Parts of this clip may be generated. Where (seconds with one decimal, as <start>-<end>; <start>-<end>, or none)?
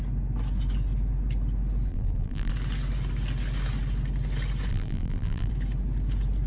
1.9-2.5; 4.7-5.5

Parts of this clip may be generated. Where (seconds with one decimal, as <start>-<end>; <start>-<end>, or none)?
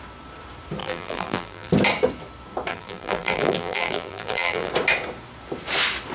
0.8-1.7; 2.7-4.7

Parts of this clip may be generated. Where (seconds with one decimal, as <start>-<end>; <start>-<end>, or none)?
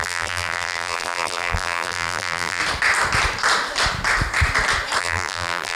0.0-2.6; 5.0-5.8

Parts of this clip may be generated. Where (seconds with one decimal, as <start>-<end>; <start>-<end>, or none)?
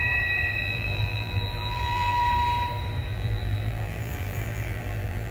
0.6-2.2; 3.1-5.3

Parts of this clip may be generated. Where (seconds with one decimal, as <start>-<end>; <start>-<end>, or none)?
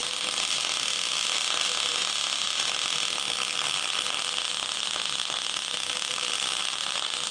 0.0-0.9; 2.0-3.0; 5.2-7.3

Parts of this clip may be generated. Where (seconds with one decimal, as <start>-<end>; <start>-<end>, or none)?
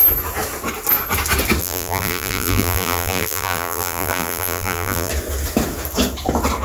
1.6-5.1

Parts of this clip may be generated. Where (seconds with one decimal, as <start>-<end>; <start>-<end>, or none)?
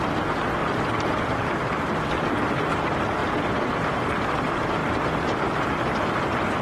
0.6-1.5; 4.8-6.0